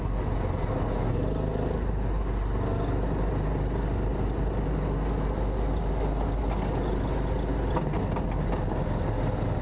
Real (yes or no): yes